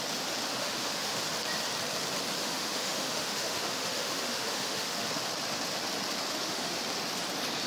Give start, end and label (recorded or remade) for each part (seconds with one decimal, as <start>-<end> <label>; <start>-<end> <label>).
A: 0.0-0.5 recorded; 0.5-1.2 remade; 1.2-2.4 recorded; 2.4-5.1 remade; 5.1-6.3 recorded; 6.3-6.8 remade; 6.8-7.7 recorded